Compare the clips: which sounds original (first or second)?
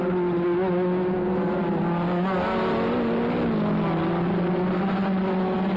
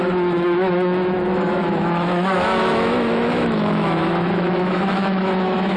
first